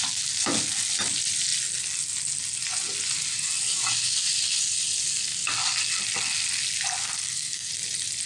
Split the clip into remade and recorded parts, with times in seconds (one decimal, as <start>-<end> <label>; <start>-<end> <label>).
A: 0.0-7.0 recorded; 7.0-7.7 remade; 7.7-8.3 recorded